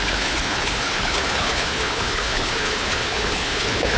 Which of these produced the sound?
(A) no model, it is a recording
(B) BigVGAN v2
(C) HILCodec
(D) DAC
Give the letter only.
C